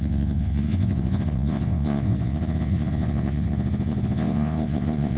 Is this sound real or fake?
fake